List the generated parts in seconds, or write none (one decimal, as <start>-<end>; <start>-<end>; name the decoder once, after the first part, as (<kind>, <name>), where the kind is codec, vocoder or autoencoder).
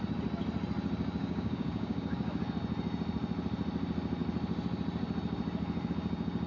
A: 1.2-2.4 (codec, DAC)